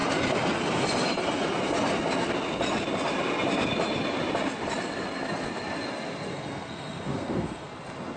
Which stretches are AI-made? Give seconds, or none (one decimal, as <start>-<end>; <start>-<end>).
6.3-7.7